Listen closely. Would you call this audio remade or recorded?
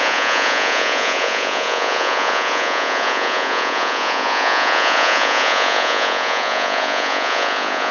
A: remade